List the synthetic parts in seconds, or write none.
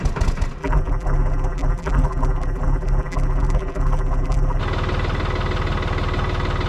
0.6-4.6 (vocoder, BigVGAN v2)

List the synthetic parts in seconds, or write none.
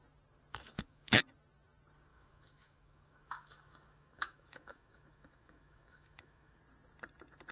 0.5-1.2 (autoencoder, DAC-VAE); 2.1-6.6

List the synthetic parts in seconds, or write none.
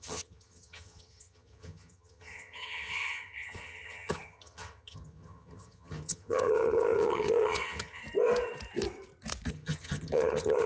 0.0-8.0 (vocoder, HiFi-GAN); 9.5-10.7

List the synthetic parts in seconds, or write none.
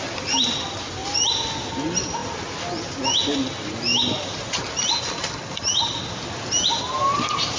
none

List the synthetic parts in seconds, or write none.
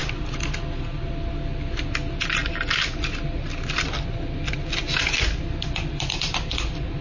none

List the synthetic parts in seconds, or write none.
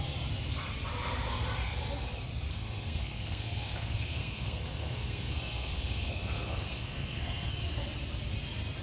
2.5-7.5 (codec, SNAC)